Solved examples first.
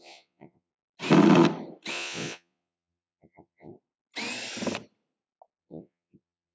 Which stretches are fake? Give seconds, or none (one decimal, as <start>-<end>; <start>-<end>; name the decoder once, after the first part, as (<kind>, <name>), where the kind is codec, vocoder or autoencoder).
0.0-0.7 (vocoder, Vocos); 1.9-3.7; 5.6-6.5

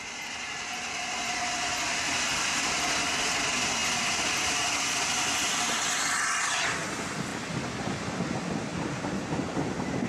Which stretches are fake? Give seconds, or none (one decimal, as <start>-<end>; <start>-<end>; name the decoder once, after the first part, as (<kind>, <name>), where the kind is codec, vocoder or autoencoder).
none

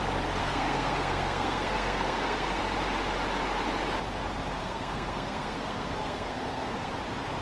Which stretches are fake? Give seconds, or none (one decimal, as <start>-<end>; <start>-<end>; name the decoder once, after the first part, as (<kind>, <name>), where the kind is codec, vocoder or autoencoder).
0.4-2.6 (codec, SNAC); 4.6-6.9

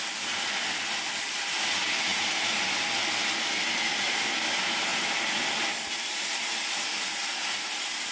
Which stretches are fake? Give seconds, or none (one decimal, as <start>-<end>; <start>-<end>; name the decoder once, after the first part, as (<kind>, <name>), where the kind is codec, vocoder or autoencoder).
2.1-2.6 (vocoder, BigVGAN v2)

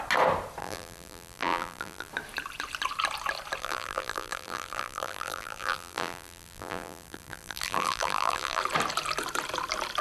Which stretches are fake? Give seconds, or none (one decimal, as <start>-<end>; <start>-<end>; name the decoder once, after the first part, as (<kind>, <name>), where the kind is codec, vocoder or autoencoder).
0.6-2.1 (vocoder, BigVGAN v2); 3.6-8.6

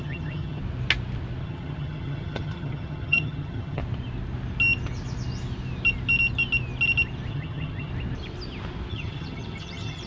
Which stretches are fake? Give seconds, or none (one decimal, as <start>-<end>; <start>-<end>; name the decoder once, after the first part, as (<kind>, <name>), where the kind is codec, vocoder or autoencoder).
0.0-0.6 (vocoder, HiFi-GAN); 1.4-3.8; 7.3-7.9; 8.9-10.1